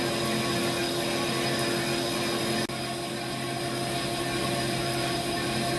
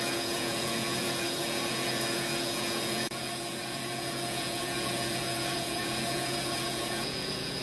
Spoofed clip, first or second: second